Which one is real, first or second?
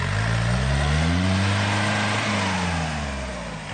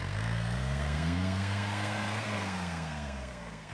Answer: first